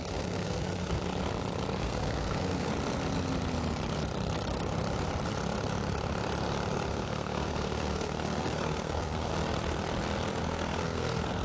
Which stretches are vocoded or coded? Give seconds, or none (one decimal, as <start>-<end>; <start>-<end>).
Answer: 0.0-1.0; 1.8-2.7; 6.9-9.3; 10.4-11.4